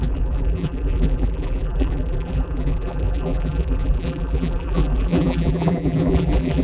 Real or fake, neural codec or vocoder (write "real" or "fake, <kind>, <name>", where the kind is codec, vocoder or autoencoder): fake, vocoder, BigVGAN v2